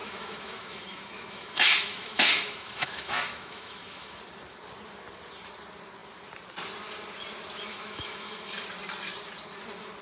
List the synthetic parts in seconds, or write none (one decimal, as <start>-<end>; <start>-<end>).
0.0-4.2; 7.7-8.5